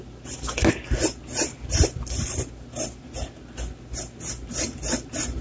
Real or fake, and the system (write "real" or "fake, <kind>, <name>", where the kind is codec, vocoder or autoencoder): real